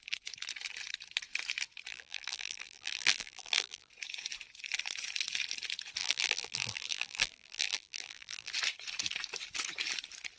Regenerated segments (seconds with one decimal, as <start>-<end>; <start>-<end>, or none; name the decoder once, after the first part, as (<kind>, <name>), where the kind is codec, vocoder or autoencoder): 1.9-3.9 (vocoder, BigVGAN v2); 6.0-8.5